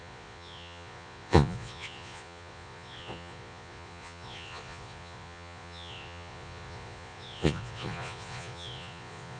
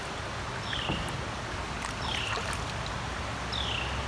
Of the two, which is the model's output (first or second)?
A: first